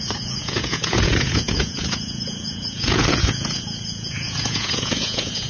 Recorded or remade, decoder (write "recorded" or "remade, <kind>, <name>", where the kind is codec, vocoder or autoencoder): remade, vocoder, Vocos